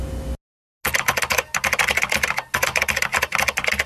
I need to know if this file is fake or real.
real